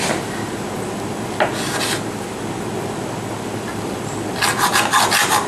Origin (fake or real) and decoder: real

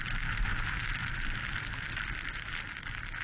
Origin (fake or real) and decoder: real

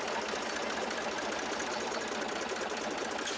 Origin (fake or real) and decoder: real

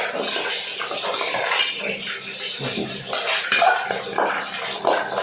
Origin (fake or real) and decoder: real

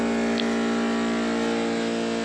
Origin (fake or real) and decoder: real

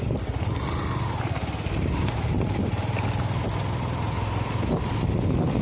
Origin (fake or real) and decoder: real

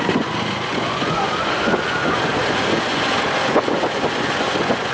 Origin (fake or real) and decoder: fake, vocoder, Vocos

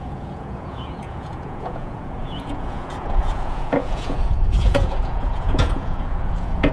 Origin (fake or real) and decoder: fake, vocoder, Vocos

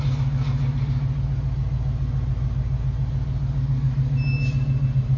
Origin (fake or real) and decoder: real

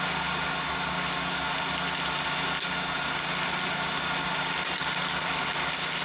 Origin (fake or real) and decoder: real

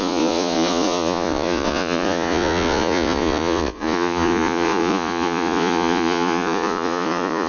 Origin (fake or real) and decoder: fake, vocoder, Vocos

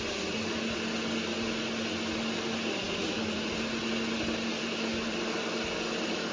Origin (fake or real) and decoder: real